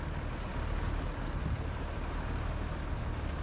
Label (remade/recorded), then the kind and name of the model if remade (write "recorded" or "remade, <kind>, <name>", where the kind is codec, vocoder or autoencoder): recorded